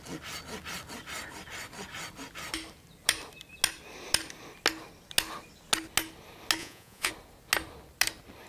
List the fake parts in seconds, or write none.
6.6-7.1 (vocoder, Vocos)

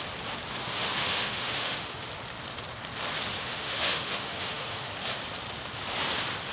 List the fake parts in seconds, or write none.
0.6-2.1 (autoencoder, DAC-VAE); 3.4-4.9

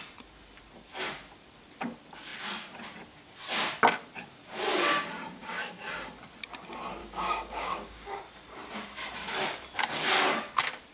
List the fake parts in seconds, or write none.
5.4-6.1 (codec, DAC); 7.0-8.2

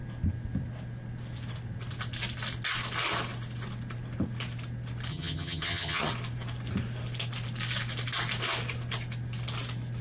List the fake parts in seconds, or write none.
5.1-6.1 (vocoder, HiFi-GAN)

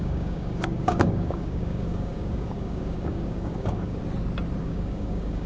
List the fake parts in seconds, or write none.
0.0-4.0 (codec, DAC); 4.6-5.5